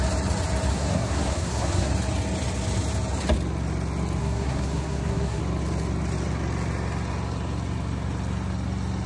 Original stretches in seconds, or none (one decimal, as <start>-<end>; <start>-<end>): 0.0-0.7; 1.9-4.2; 5.4-9.1